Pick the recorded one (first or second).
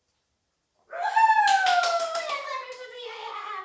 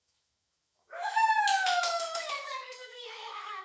first